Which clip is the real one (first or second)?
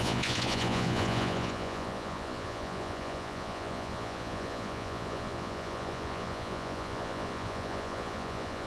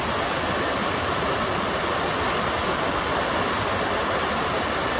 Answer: second